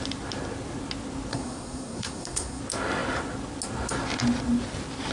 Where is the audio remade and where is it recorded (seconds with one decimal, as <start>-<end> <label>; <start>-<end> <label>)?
0.0-1.3 recorded; 1.3-2.6 remade; 2.6-5.1 recorded